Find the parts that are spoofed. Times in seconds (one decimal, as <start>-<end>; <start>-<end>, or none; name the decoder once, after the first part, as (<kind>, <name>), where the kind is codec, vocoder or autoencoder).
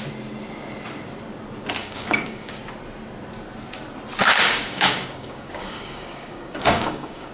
1.8-2.6 (codec, DAC); 4.2-7.3